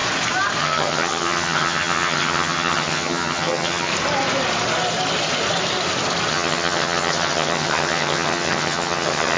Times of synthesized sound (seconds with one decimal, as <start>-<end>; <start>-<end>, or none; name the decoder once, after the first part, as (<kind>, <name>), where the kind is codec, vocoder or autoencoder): 0.6-3.9 (vocoder, HiFi-GAN); 6.3-9.4